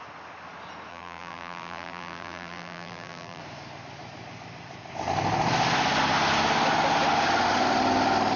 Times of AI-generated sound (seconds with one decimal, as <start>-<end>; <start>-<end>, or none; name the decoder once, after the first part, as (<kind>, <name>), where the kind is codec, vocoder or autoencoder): 0.9-3.4 (vocoder, BigVGAN v2)